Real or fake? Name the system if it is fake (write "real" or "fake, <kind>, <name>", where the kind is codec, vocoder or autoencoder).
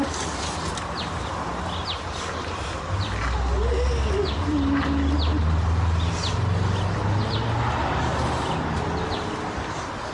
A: real